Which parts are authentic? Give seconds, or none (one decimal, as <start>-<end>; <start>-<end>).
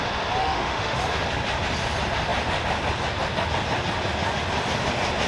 0.0-0.4; 1.0-5.3